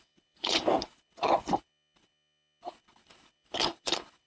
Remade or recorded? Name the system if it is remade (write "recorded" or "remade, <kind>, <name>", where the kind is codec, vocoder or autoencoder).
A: remade, codec, HILCodec